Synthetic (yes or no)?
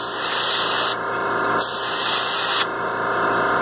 no